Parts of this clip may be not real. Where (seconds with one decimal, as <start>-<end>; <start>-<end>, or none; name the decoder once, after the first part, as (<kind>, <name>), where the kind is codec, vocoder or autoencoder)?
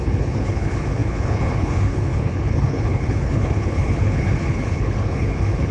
0.0-5.7 (codec, HILCodec)